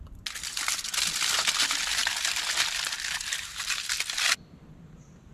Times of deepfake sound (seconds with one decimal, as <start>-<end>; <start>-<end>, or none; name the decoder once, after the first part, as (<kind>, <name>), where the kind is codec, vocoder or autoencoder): none